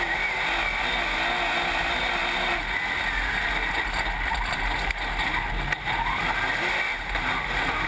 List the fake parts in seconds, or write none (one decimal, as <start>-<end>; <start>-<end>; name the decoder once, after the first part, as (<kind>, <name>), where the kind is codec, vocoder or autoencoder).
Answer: 6.9-7.9 (vocoder, BigVGAN v2)

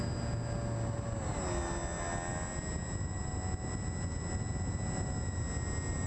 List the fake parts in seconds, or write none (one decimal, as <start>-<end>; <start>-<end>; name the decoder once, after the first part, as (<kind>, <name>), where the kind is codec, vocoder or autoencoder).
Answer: none

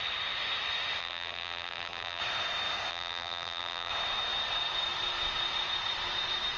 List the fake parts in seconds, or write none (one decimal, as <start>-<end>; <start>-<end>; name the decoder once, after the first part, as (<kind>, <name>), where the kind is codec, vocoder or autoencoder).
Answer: 1.0-2.2 (vocoder, BigVGAN v2); 2.9-3.9

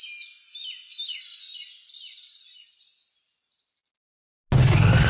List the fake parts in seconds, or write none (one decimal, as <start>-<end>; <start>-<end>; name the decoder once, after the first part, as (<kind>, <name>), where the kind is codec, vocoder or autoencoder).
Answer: 0.9-2.8 (vocoder, BigVGAN v2)

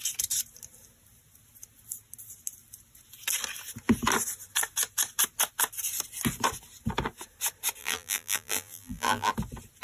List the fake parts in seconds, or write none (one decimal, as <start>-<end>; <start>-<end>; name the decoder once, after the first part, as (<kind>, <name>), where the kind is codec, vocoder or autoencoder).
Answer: 7.8-9.3 (vocoder, BigVGAN v2)

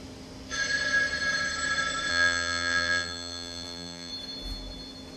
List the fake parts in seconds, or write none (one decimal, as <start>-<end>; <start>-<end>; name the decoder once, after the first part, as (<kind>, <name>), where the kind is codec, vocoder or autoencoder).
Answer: 2.1-4.1 (vocoder, BigVGAN v2)

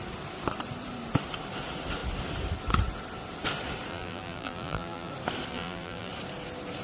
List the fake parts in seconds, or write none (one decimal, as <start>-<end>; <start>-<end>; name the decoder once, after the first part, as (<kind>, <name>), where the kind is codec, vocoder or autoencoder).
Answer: 3.9-5.1 (vocoder, BigVGAN v2); 5.5-6.1